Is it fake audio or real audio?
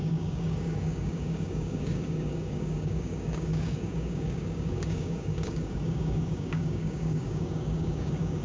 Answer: fake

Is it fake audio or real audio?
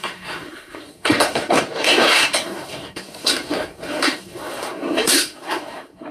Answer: fake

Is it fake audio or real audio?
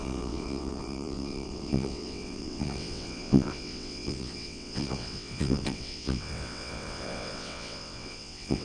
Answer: fake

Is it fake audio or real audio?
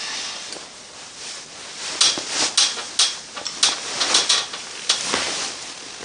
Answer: real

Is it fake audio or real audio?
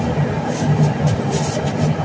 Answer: real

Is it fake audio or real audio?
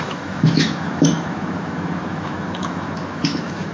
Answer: fake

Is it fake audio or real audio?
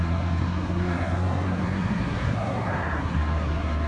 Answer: fake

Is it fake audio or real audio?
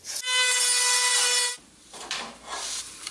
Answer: real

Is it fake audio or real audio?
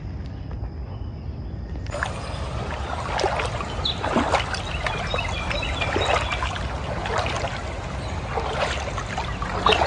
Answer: real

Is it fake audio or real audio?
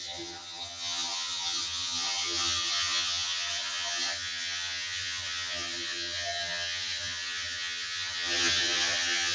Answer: fake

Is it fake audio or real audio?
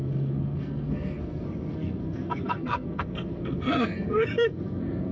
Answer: fake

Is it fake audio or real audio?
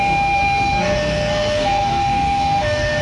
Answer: fake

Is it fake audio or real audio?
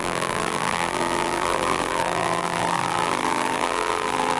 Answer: fake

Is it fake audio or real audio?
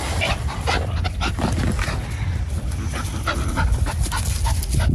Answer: real